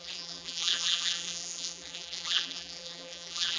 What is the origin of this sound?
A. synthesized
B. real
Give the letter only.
A